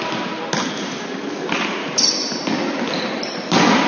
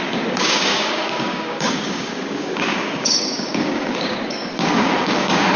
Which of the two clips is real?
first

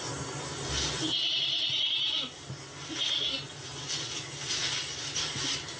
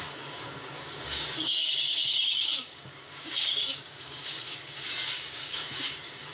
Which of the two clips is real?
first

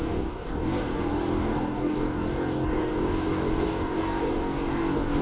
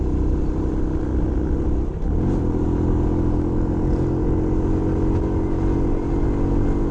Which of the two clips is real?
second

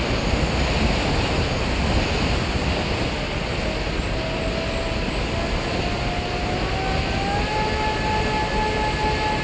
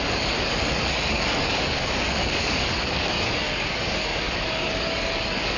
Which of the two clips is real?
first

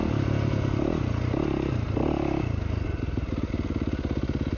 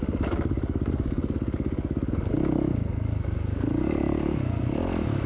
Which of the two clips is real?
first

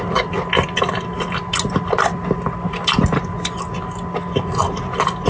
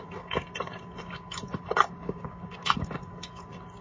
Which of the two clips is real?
first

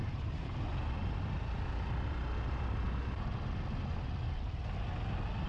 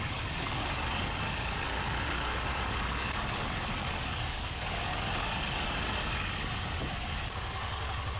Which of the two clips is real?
first